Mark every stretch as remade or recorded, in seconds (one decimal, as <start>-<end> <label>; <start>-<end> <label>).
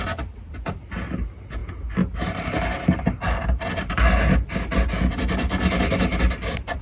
0.0-6.8 recorded